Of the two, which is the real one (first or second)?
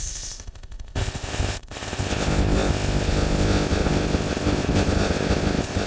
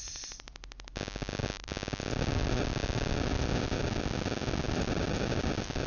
second